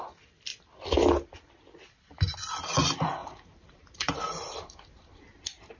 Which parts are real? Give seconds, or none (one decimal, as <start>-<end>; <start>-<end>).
0.0-3.2; 4.1-5.8